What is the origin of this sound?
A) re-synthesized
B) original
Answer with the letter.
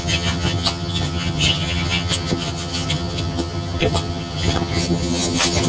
A